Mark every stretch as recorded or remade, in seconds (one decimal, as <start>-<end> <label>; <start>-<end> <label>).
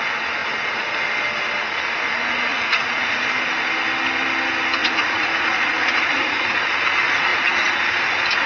0.0-2.5 recorded; 2.5-3.2 remade; 3.2-4.8 recorded; 4.8-6.6 remade; 6.6-8.5 recorded